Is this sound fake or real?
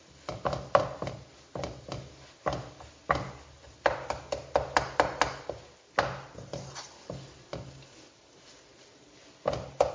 real